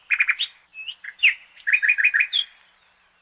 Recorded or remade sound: remade